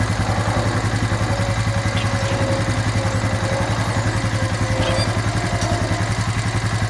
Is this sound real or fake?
real